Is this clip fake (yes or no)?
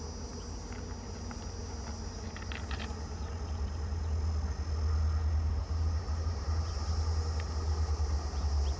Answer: no